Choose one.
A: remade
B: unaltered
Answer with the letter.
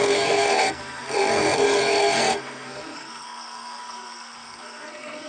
A